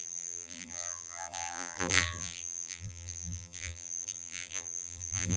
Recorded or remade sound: remade